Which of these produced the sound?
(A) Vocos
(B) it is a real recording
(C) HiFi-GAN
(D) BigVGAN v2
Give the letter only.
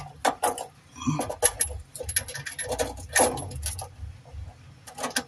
B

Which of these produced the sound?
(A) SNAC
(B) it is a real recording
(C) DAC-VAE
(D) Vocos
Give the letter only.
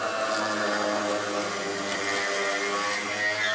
B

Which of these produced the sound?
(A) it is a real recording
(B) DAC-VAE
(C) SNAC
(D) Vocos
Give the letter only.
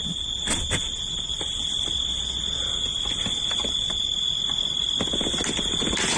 A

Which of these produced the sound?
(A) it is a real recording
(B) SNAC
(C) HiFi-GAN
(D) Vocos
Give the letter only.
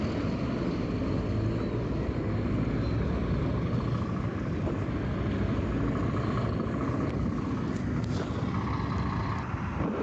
A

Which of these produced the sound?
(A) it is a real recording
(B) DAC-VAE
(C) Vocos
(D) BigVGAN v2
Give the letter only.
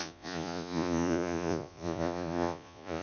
C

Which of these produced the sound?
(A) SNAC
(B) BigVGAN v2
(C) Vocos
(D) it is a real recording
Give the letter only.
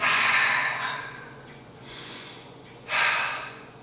C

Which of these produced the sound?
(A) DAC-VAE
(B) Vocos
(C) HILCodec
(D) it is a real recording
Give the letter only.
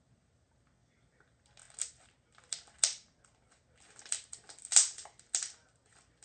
D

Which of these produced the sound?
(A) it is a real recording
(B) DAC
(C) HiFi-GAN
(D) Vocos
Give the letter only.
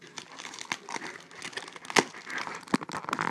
A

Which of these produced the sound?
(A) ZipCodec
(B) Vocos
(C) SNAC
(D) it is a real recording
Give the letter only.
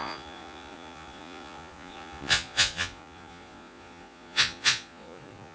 B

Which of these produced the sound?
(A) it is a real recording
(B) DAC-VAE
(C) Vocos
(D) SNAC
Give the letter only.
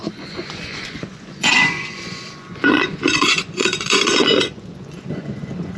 C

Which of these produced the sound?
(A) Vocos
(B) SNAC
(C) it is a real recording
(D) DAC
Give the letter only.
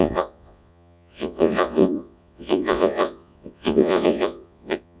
A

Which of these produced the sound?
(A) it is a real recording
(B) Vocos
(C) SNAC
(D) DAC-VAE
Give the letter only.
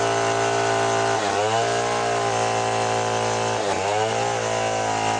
A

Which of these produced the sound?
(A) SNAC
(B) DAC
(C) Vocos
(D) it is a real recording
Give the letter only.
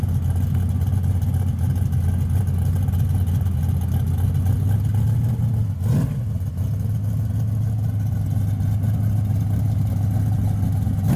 D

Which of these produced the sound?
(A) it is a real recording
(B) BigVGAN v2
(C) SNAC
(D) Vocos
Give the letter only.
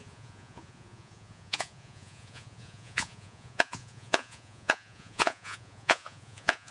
D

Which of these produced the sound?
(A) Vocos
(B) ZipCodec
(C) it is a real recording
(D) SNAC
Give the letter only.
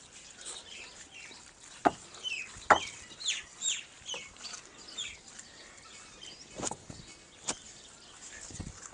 C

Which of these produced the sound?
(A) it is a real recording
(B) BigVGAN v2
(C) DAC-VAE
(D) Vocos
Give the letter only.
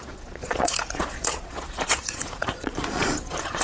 D